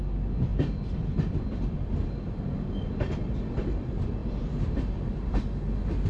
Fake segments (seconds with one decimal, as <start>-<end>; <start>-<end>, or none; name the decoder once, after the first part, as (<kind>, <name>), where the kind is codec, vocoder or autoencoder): 4.2-5.4 (vocoder, BigVGAN v2)